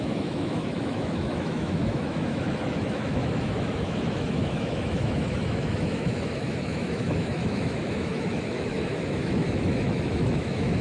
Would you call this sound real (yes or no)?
no